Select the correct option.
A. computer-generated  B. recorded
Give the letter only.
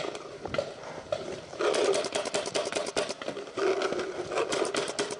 B